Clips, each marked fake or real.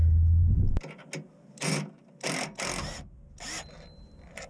real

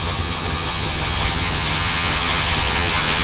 fake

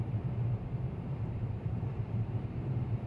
fake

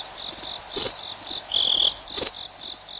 real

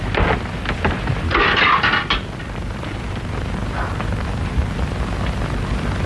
real